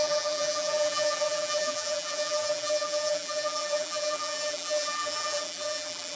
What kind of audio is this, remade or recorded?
remade